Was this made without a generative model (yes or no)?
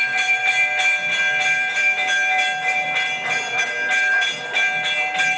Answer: yes